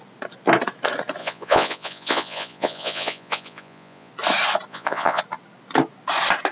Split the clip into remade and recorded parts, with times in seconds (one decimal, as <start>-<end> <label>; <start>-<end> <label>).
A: 0.0-1.2 recorded; 1.2-4.1 remade; 4.1-4.7 recorded; 4.7-5.2 remade; 5.2-6.5 recorded